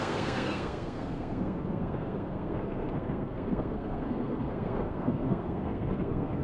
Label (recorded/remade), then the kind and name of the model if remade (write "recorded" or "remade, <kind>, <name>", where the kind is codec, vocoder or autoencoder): remade, codec, SNAC